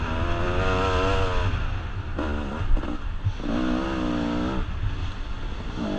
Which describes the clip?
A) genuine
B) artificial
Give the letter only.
A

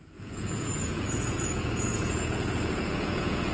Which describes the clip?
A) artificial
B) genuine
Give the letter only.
A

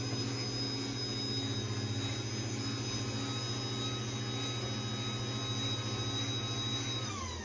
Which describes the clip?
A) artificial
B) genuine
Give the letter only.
B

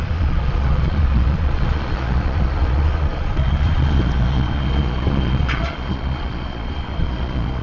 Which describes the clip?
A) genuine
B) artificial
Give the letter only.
B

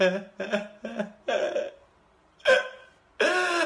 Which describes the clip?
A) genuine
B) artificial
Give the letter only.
A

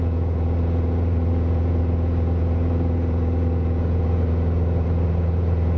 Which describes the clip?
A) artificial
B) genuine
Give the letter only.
A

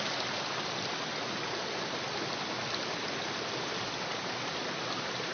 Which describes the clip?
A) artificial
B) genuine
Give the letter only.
B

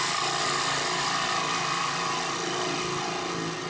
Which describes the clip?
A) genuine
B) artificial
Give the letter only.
A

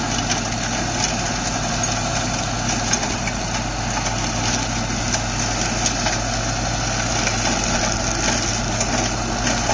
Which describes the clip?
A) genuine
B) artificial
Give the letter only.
A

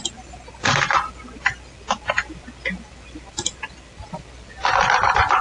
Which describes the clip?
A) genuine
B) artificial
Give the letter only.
A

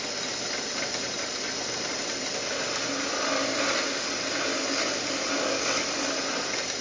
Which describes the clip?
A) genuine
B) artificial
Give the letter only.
A